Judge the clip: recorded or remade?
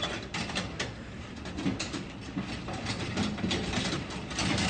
recorded